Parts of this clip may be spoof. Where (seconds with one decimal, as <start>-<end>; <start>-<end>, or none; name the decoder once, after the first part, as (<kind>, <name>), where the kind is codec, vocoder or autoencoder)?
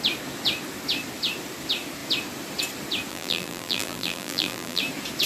3.1-4.8 (vocoder, BigVGAN v2)